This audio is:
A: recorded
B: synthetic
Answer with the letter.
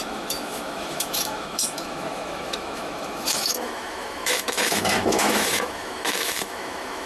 B